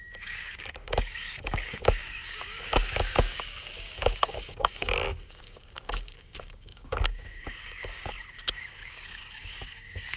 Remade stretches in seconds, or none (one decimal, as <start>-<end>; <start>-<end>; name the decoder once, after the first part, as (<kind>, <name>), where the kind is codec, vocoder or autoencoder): 0.0-10.2 (codec, DAC)